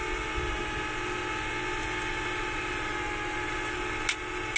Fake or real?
real